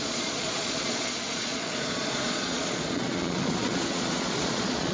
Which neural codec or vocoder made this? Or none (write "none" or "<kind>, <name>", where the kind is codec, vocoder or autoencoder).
vocoder, Vocos